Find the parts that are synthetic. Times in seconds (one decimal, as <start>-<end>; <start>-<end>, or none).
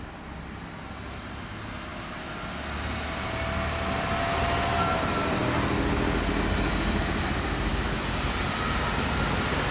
none